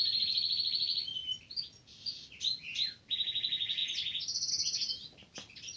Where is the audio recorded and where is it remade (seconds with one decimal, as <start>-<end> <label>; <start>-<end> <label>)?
0.0-5.8 recorded